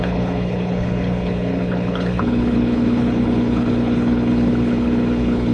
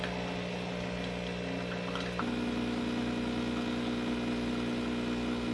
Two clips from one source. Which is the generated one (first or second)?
first